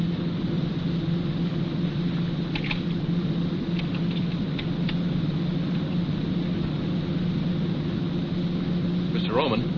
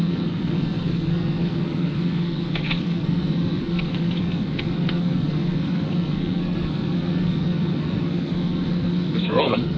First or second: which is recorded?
first